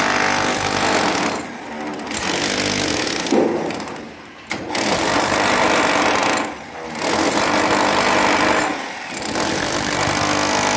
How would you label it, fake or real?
real